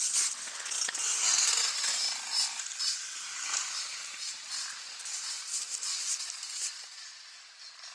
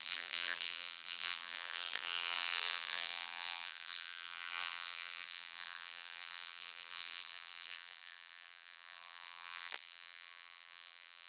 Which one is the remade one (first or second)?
second